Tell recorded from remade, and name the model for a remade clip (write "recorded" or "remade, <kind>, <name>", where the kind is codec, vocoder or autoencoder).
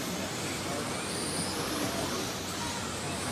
recorded